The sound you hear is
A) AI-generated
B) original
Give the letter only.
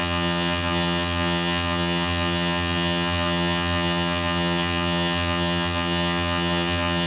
A